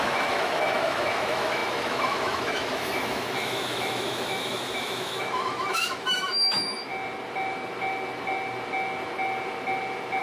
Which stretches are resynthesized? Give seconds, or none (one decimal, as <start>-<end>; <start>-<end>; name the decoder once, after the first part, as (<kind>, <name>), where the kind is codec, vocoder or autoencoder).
0.0-6.9 (autoencoder, DAC-VAE)